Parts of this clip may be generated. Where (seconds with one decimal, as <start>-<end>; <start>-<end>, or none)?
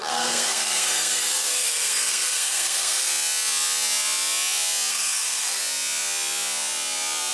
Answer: 0.0-3.1; 4.9-5.6